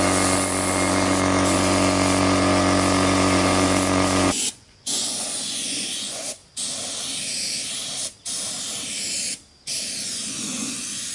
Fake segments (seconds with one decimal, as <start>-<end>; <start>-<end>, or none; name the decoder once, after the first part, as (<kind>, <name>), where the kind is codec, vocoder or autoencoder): 0.0-6.4 (vocoder, Vocos); 10.0-11.1